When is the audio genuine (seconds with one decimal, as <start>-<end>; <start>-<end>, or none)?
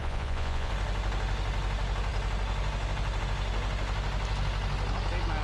0.7-5.4